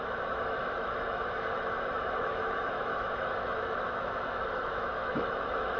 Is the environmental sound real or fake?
fake